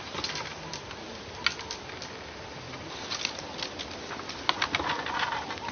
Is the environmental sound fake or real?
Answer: real